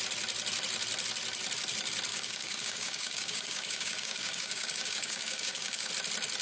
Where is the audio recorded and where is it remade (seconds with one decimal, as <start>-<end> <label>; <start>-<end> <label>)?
0.0-2.1 recorded; 2.1-5.9 remade; 5.9-6.4 recorded